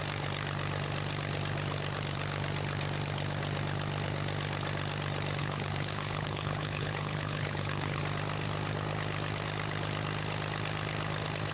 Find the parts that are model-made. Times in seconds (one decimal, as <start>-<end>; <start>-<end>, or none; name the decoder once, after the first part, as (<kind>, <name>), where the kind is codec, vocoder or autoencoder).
5.4-8.0 (codec, HILCodec)